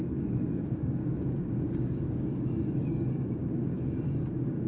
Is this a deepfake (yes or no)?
yes